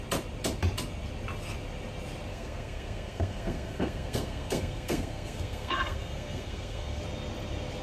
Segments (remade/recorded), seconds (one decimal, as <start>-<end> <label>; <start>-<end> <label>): 0.0-2.3 recorded; 2.3-7.0 remade; 7.0-7.8 recorded